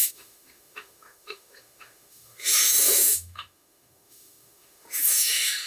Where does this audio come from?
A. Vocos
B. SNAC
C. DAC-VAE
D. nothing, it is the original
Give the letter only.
C